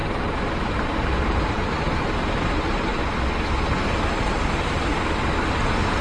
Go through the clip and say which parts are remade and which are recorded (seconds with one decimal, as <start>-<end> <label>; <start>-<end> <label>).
0.0-0.6 recorded; 0.6-2.9 remade; 2.9-3.6 recorded; 3.6-4.9 remade; 4.9-5.5 recorded; 5.5-6.0 remade